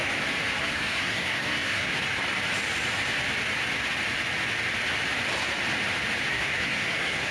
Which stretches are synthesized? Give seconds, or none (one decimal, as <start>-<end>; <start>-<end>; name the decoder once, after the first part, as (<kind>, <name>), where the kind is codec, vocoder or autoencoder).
0.6-1.9 (codec, SNAC); 6.3-7.3